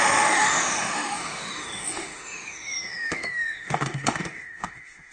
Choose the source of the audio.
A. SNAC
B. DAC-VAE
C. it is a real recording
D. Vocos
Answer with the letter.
B